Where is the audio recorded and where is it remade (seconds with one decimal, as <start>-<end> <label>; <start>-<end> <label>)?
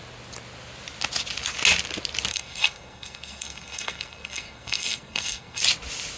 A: 0.0-2.3 recorded; 2.3-5.6 remade; 5.6-6.2 recorded